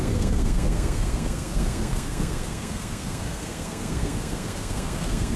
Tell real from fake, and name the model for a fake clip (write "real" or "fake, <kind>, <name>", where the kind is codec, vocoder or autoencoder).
fake, codec, SNAC